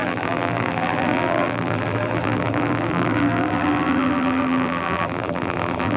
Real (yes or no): no